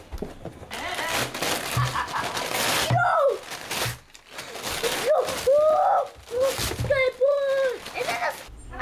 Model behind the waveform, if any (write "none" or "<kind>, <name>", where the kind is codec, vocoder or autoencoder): none